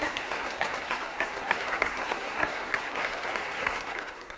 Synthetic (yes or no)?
yes